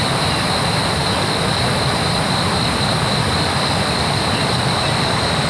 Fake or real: fake